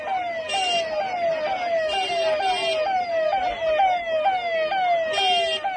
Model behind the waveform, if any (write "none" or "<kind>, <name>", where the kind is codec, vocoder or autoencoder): none